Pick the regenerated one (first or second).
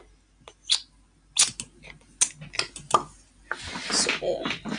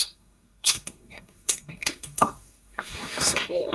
second